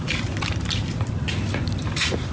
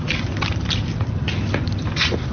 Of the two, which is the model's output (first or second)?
first